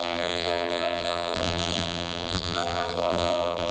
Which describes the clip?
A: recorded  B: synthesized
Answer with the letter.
B